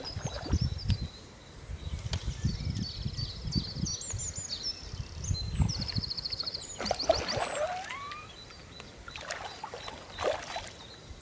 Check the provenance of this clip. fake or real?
real